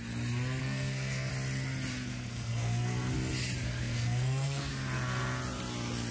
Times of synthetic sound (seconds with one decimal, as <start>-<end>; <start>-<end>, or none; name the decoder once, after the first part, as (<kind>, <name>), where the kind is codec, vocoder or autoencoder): 0.6-1.3 (codec, SNAC); 2.1-3.1; 3.7-4.7